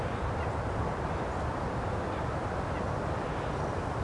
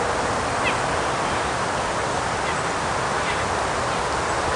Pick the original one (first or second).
second